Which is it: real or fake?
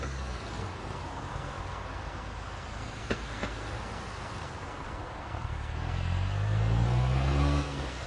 fake